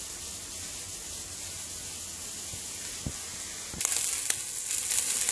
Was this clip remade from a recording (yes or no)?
no